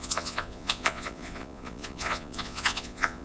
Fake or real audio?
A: fake